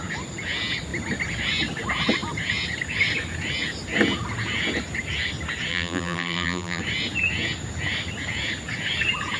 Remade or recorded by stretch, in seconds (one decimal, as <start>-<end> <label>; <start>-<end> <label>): 0.0-5.7 recorded; 5.7-6.8 remade; 6.8-9.4 recorded